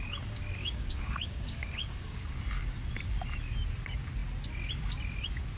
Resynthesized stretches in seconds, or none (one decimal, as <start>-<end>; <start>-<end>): 0.6-2.2